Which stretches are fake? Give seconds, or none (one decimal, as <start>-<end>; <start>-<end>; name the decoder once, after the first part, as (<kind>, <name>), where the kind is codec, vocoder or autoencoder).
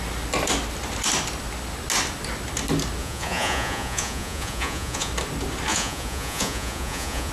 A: 3.0-5.1 (vocoder, Vocos); 5.7-7.3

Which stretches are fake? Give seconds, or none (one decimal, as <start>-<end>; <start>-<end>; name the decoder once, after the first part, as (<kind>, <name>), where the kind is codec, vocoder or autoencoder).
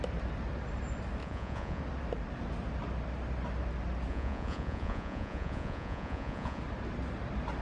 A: 1.2-1.8 (vocoder, Vocos); 4.1-6.6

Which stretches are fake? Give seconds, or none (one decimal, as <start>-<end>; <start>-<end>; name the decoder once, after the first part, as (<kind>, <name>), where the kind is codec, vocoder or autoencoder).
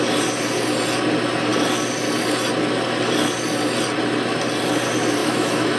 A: 5.2-5.8 (autoencoder, DAC-VAE)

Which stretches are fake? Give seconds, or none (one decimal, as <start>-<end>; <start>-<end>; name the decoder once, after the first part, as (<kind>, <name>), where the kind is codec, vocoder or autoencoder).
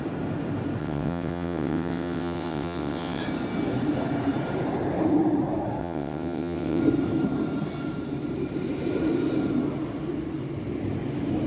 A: 0.8-3.2 (vocoder, WaveNeXt); 5.8-6.8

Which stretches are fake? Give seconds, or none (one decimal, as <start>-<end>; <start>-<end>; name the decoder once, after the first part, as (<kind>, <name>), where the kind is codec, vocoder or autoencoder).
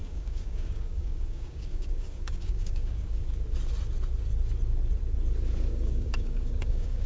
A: 0.0-3.2 (codec, DAC); 5.7-7.1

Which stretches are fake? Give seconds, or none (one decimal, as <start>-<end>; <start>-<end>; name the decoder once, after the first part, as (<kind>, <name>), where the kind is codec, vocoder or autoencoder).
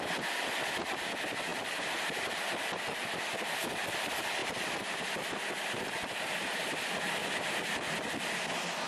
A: 1.5-2.3 (vocoder, BigVGAN v2); 4.4-5.3; 7.2-7.7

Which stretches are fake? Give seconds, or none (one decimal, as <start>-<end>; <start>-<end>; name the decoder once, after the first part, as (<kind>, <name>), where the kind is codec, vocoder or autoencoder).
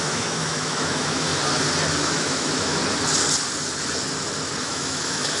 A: 0.0-1.3 (autoencoder, DAC-VAE); 2.0-2.8; 4.6-5.4